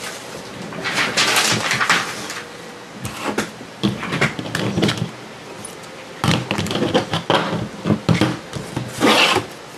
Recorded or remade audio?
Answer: recorded